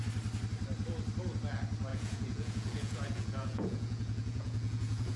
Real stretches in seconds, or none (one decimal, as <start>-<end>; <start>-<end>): 0.0-1.9